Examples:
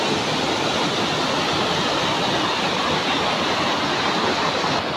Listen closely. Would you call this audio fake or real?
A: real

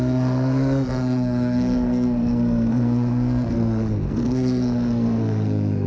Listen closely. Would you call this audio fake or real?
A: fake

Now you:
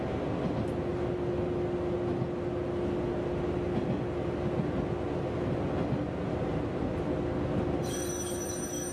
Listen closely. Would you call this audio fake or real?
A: real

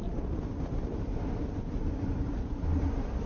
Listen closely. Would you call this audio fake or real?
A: real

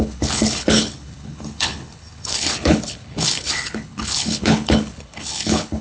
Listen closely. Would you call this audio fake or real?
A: fake